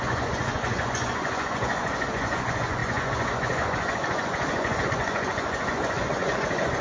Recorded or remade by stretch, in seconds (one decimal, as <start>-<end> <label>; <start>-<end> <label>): 0.0-6.8 remade